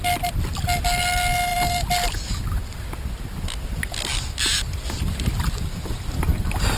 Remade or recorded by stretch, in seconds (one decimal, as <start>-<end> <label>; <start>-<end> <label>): 0.0-6.8 recorded